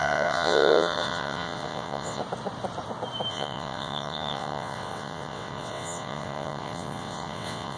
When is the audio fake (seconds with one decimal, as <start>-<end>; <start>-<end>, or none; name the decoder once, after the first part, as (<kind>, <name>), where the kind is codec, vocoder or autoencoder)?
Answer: 0.0-2.2 (vocoder, WaveNeXt); 3.3-7.8